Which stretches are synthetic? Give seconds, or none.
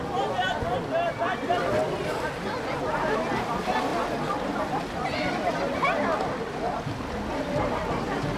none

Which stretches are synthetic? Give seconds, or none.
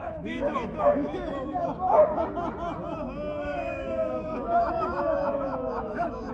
0.0-1.7; 3.4-6.3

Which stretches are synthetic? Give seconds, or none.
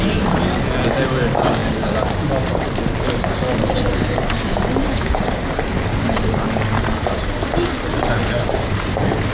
4.8-5.4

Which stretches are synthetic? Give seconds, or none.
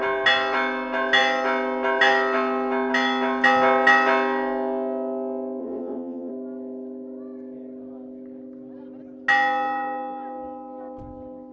5.6-6.3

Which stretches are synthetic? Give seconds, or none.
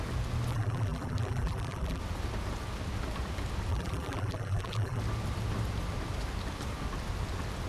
0.5-2.0; 3.7-5.0